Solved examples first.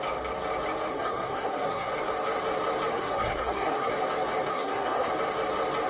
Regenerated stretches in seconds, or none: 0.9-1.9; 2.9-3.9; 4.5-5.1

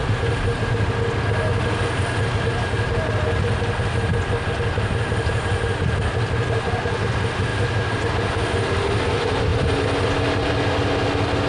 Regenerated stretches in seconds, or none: none